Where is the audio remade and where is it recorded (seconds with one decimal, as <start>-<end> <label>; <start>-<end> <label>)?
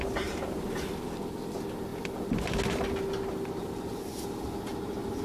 0.0-5.2 recorded